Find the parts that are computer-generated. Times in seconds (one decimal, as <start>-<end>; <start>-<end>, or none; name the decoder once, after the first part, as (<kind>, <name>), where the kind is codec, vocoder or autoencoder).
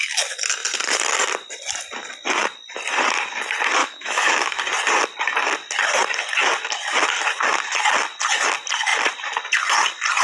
3.8-4.6 (autoencoder, DAC-VAE)